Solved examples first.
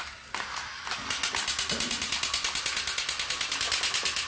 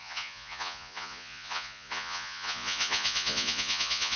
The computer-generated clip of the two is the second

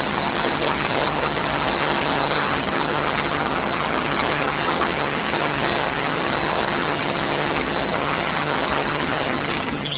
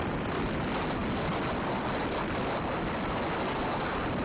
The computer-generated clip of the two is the first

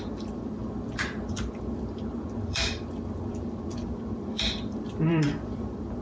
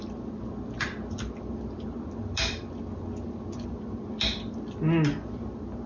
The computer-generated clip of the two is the first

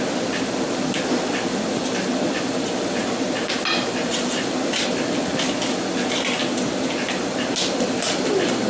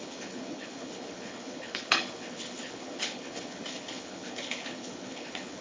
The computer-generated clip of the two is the second